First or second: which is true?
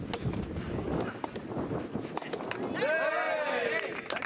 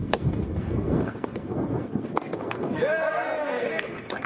first